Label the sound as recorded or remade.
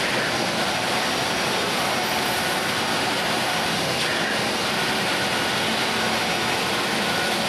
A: recorded